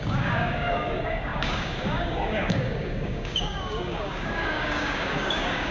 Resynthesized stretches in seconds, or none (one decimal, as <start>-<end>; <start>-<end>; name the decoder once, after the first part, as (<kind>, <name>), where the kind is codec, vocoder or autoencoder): 0.0-5.7 (codec, DAC)